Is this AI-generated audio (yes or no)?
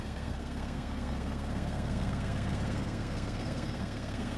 yes